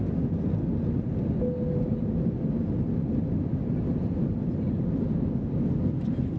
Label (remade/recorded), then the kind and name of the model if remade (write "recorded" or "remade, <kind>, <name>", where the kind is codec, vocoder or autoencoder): recorded